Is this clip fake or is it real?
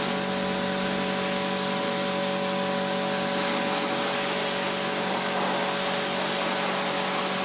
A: real